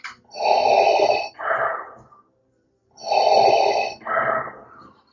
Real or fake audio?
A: fake